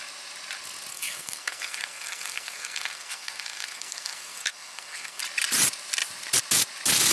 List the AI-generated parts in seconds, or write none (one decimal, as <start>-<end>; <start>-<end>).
0.9-5.2